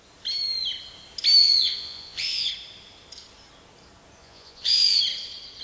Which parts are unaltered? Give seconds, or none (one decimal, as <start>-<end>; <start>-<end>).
0.0-1.4; 2.5-4.2; 5.0-5.6